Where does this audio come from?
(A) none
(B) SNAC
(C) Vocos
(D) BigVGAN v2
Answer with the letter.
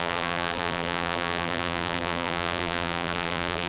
D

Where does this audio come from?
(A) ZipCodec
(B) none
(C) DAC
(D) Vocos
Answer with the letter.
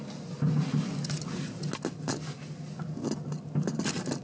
B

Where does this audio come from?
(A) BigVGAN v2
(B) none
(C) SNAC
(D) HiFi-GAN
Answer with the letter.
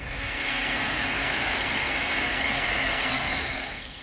C